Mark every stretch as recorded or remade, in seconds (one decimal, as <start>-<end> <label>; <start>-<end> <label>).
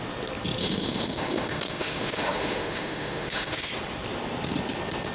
0.0-0.6 recorded; 0.6-3.7 remade; 3.7-5.1 recorded